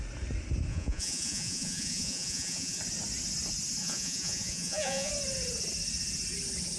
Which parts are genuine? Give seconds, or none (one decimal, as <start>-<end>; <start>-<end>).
0.0-0.7; 2.8-3.8; 5.1-6.8

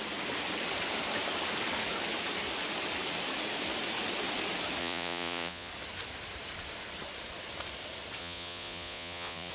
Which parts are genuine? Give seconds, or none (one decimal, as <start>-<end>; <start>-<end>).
0.0-4.8; 5.7-8.2

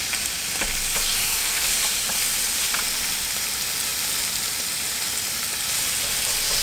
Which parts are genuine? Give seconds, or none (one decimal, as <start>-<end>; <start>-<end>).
0.0-1.2; 1.7-6.6

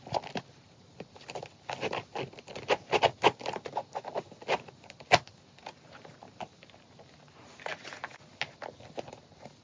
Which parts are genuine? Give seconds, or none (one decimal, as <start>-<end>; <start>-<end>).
0.0-5.6; 7.2-9.6

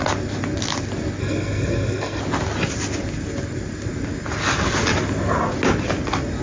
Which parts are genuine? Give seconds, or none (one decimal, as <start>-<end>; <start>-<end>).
0.0-1.2; 2.2-6.4